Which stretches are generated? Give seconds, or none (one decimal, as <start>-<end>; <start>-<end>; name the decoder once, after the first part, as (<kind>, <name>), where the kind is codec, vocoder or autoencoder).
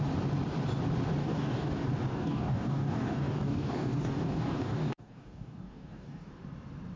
1.2-1.7 (codec, DAC); 2.1-6.3